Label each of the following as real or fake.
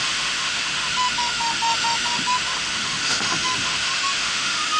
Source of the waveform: fake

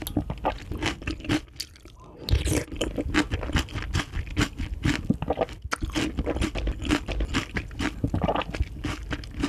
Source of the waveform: real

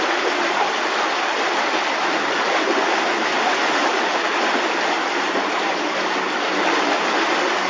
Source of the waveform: real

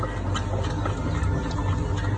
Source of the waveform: real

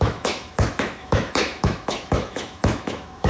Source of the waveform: fake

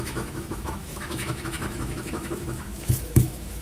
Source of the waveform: fake